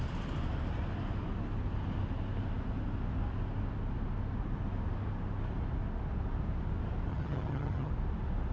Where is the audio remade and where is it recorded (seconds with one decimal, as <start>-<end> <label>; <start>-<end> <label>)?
0.0-7.1 recorded; 7.1-7.9 remade; 7.9-8.5 recorded